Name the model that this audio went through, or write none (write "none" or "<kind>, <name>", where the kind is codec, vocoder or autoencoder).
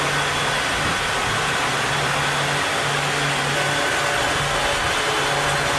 none